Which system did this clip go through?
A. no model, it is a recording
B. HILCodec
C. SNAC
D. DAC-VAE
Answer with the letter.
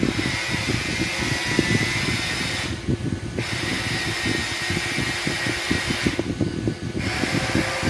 A